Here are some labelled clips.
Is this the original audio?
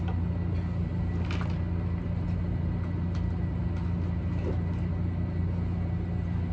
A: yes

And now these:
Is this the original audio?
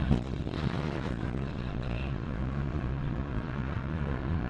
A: no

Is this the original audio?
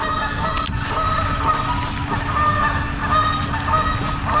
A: yes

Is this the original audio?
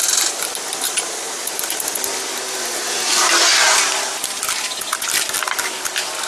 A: yes